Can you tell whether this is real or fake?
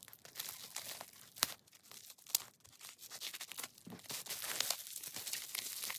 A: real